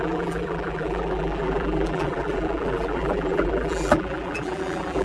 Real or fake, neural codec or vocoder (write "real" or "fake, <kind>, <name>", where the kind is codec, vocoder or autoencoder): fake, vocoder, BigVGAN v2